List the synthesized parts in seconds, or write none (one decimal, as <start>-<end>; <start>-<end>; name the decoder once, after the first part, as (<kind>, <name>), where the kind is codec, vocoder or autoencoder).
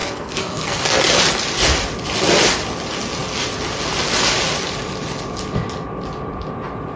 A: 0.0-0.8 (codec, SNAC)